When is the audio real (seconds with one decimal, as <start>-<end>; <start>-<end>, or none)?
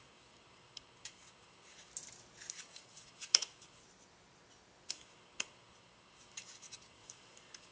1.9-2.5; 3.8-4.9